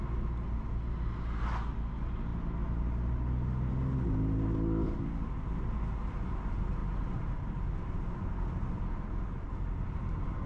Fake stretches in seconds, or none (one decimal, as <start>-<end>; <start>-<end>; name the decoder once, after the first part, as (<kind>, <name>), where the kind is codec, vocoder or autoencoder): none